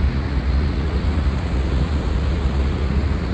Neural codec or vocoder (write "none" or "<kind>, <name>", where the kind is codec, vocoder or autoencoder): vocoder, Vocos